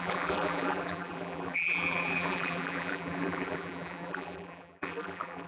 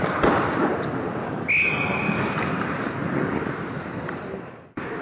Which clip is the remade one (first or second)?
first